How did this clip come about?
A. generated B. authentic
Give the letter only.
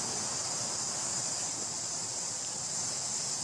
A